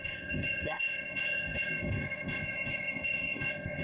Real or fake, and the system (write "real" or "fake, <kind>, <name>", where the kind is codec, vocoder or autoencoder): fake, codec, ZipCodec